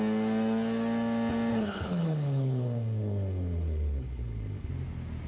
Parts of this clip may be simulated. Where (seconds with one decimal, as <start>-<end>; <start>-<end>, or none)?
1.5-4.7